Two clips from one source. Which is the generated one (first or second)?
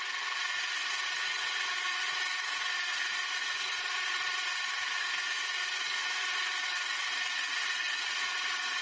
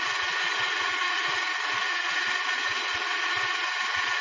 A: second